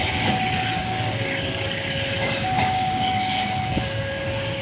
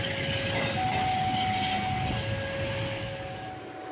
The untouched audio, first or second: second